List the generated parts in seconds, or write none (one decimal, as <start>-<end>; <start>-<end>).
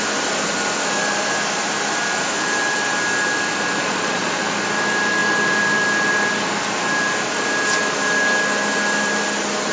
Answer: 3.8-4.4